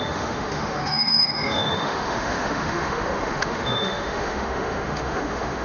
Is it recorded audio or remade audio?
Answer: remade